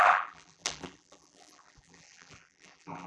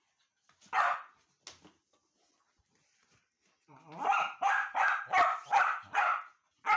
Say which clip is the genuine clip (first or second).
second